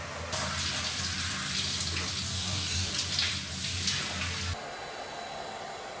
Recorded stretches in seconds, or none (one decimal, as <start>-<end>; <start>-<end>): 0.0-2.3; 2.9-6.0